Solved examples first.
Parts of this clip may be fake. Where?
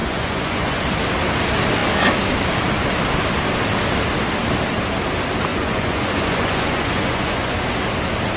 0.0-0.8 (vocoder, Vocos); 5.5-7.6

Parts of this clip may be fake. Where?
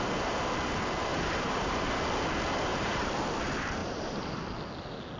1.1-1.9 (vocoder, BigVGAN v2); 2.7-3.2; 3.8-4.4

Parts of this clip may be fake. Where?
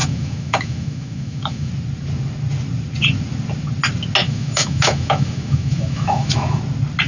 0.0-1.7 (autoencoder, DAC-VAE); 4.2-6.6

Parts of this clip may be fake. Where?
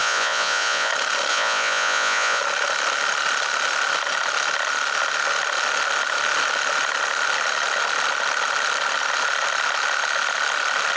0.0-0.9 (vocoder, Vocos); 1.3-2.4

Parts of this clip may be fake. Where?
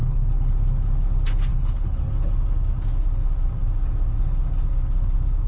0.0-0.5 (codec, HILCodec); 1.5-2.1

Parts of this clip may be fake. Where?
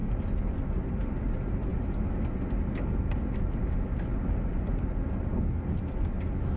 none